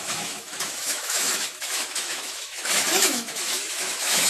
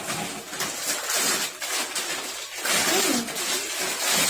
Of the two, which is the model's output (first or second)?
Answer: first